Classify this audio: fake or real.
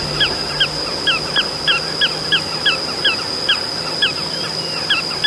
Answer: real